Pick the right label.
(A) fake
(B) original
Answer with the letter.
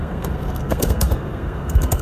A